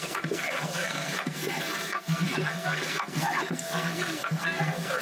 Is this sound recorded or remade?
remade